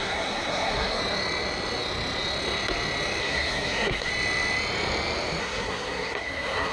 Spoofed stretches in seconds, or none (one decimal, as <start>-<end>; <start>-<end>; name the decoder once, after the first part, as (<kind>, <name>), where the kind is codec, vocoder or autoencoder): 0.0-1.0 (codec, SNAC); 3.2-4.1; 5.4-6.7